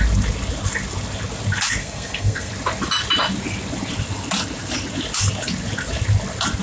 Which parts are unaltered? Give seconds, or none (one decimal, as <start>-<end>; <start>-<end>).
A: 0.0-1.8; 2.5-6.6

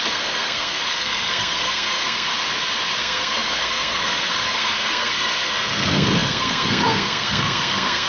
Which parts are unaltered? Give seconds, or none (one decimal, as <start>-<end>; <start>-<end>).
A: 2.3-3.0

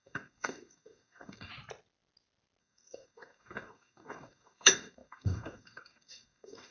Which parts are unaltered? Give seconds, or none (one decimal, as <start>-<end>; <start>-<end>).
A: 1.5-2.6

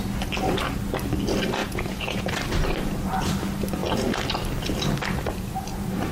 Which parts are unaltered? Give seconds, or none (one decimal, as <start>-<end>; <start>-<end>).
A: 0.0-1.6; 2.3-6.1

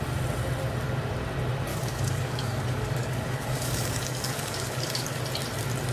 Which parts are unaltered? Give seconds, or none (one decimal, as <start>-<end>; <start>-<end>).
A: 0.0-1.7; 5.2-5.9

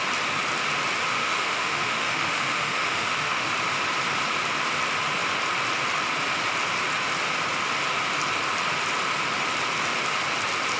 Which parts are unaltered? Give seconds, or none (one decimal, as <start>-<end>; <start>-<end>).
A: 0.0-1.1; 3.5-10.8

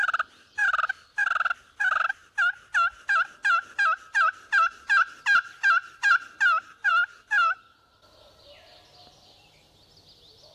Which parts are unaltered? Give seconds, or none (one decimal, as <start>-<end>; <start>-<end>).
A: 0.0-10.5